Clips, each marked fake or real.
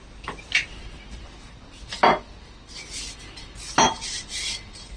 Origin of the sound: real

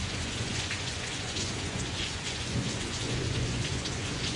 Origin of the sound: fake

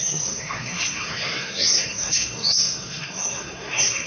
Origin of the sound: fake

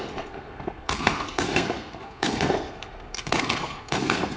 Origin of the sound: fake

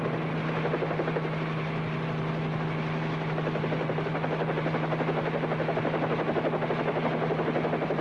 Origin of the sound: real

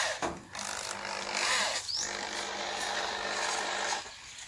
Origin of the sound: real